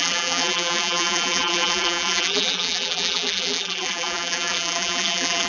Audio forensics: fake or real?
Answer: fake